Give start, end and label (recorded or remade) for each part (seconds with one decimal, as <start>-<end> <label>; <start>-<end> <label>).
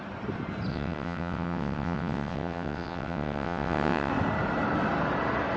0.0-0.7 recorded; 0.7-4.1 remade; 4.1-5.6 recorded